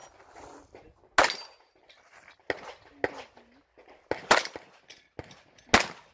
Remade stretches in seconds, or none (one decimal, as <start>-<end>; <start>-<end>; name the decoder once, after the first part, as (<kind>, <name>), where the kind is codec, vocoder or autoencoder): none